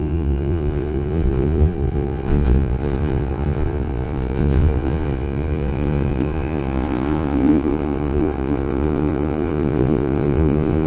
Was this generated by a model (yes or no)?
yes